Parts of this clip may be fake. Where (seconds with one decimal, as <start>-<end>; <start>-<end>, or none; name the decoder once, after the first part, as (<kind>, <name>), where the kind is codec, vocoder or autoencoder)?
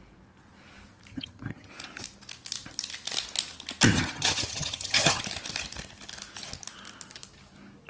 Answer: 1.1-1.7 (vocoder, HiFi-GAN); 3.9-5.2